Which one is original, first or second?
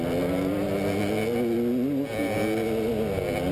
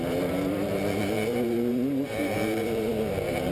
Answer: first